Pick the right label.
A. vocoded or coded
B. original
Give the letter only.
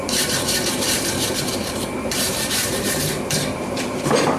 A